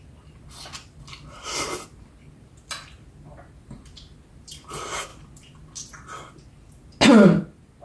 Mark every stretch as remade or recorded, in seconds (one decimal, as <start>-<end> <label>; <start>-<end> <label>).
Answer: 0.0-7.8 recorded